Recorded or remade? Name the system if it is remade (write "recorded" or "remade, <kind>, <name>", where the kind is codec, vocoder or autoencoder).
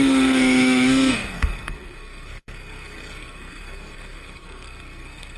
remade, codec, SNAC